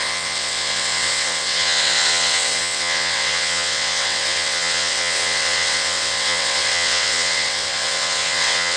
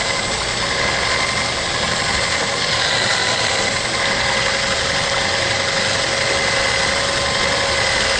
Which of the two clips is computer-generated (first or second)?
first